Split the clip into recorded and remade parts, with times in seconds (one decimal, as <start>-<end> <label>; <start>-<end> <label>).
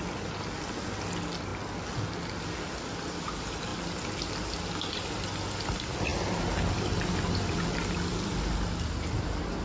0.0-9.6 recorded